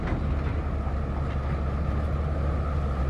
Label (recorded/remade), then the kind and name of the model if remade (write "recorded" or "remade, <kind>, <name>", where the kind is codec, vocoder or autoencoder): recorded